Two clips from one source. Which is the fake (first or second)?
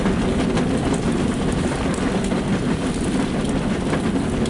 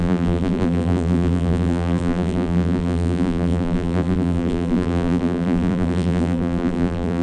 second